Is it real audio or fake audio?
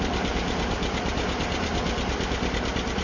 fake